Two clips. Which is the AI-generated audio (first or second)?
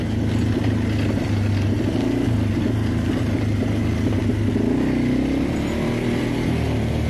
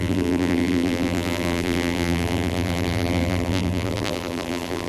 second